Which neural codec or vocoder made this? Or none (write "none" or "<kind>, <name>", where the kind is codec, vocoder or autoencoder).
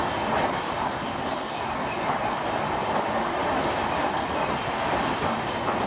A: none